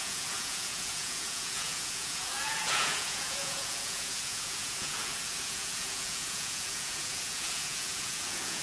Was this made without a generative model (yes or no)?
no